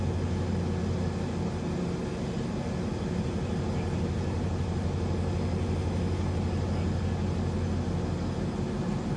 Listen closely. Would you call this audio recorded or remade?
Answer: recorded